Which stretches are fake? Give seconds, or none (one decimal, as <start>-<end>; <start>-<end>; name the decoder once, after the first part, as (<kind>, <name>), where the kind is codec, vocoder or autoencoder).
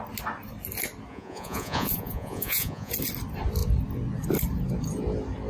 1.1-2.9 (vocoder, Vocos)